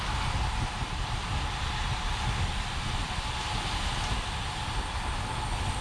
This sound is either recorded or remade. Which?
recorded